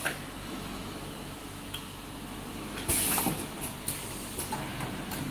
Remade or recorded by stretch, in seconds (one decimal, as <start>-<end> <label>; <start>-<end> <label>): 0.0-3.2 remade; 3.2-5.3 recorded